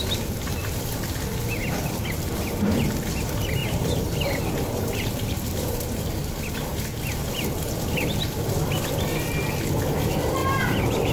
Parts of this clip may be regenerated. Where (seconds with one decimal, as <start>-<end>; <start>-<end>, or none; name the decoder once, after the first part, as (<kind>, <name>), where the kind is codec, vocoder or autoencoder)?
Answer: 3.6-5.8 (vocoder, BigVGAN v2); 10.4-11.1